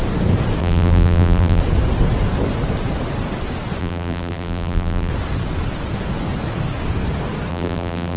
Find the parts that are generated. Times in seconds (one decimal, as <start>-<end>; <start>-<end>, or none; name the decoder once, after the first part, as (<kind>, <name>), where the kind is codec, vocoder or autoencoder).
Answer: 0.6-1.6 (vocoder, BigVGAN v2); 3.8-5.1; 7.5-8.2